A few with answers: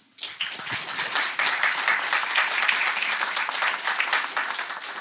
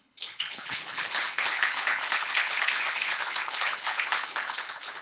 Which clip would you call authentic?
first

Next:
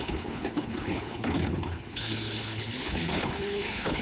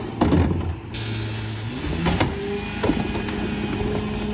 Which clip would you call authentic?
second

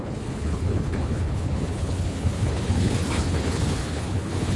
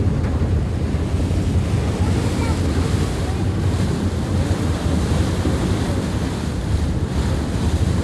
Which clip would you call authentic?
second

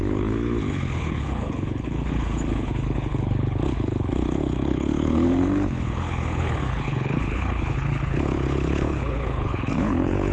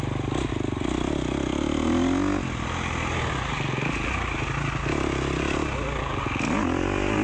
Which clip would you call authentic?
second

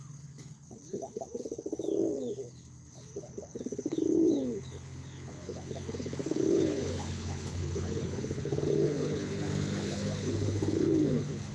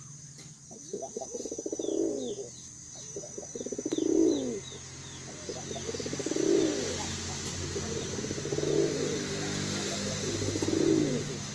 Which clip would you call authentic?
second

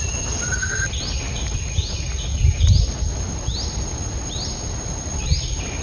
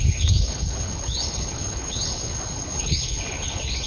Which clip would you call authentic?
first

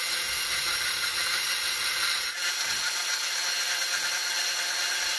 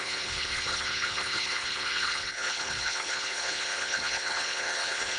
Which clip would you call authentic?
first